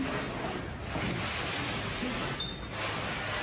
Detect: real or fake real